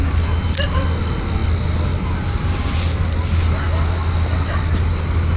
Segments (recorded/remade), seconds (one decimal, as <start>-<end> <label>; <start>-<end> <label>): 0.0-5.4 recorded